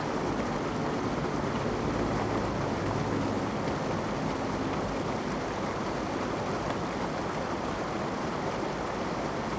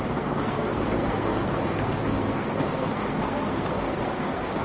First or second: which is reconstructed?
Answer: second